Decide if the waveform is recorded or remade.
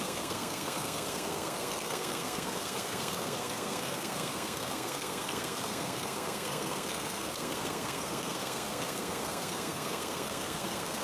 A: remade